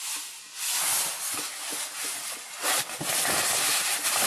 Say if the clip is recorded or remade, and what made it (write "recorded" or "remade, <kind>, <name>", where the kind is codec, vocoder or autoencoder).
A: recorded